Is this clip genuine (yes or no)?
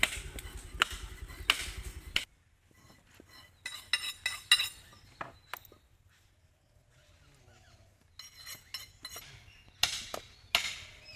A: yes